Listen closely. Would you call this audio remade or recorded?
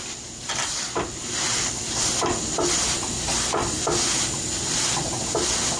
recorded